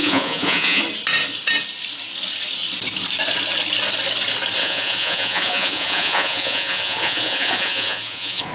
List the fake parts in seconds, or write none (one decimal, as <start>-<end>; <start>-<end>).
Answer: 0.0-0.8; 4.6-8.5

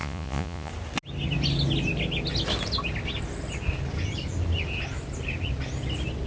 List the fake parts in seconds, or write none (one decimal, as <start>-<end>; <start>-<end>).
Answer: 0.0-0.7

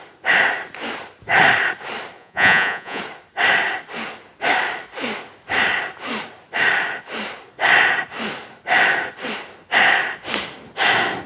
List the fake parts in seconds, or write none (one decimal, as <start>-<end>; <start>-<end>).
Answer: 2.2-3.0

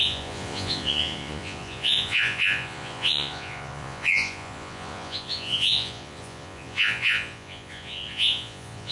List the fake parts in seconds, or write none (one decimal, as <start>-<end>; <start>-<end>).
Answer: 0.0-8.9

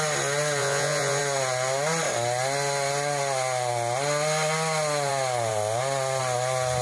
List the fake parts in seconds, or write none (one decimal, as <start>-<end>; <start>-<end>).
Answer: 0.6-1.2

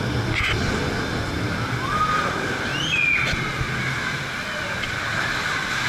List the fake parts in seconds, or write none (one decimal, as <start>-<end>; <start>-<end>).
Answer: none